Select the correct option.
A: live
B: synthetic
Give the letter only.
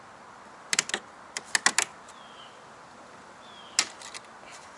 A